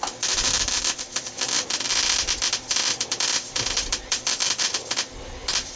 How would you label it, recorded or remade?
remade